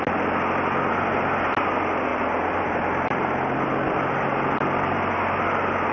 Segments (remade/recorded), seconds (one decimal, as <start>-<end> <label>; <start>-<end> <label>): 0.0-5.9 recorded